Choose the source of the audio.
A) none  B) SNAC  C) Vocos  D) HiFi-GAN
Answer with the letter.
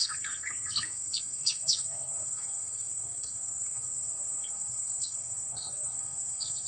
B